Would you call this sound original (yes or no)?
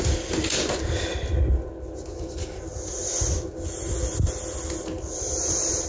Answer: yes